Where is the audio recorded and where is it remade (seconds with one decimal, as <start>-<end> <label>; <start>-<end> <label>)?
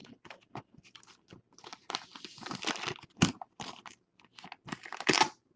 0.0-5.6 recorded